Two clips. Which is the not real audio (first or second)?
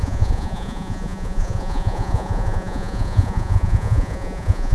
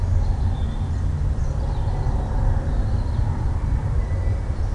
first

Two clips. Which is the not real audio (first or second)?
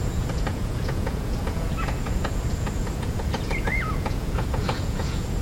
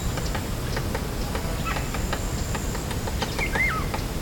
first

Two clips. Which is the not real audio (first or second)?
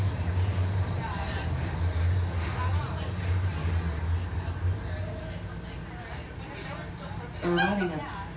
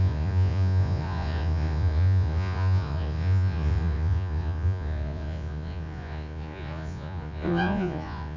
second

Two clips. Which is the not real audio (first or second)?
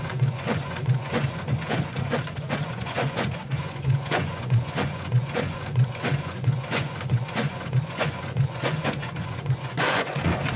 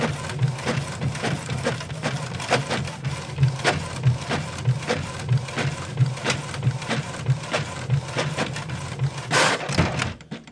first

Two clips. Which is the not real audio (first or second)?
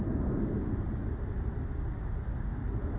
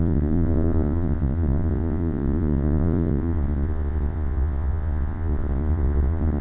second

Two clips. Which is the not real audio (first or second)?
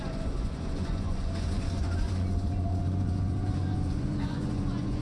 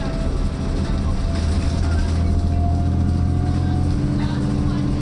first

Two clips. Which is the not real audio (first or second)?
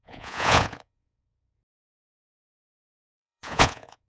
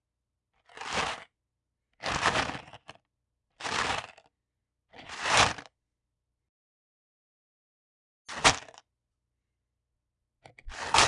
first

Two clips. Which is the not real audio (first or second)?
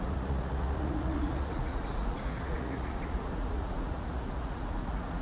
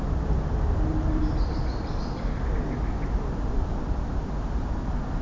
first